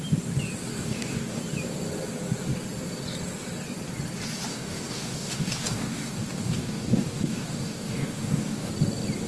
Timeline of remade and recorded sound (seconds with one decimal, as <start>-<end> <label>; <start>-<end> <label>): 0.0-0.7 recorded; 0.7-1.4 remade; 1.4-4.5 recorded; 4.5-8.7 remade; 8.7-9.3 recorded